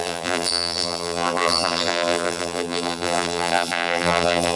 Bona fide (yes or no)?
no